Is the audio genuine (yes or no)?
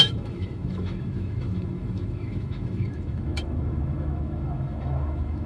no